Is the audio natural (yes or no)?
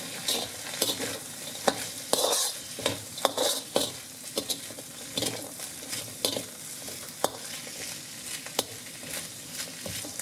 yes